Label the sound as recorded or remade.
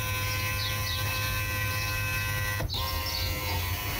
recorded